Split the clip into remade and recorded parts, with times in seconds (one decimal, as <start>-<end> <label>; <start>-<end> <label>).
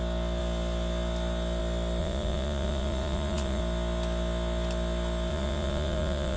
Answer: 0.0-2.0 recorded; 2.0-3.6 remade; 3.6-5.3 recorded; 5.3-6.4 remade